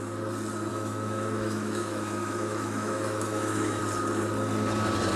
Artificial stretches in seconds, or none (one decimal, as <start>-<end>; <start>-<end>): 0.7-3.8